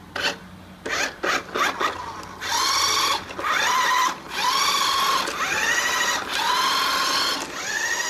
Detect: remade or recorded recorded